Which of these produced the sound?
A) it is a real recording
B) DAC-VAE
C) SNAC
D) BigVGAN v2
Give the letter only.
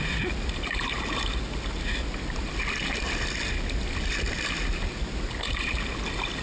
A